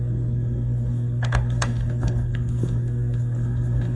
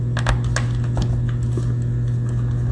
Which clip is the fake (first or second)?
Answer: first